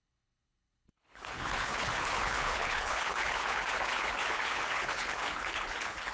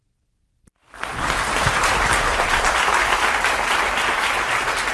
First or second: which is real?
second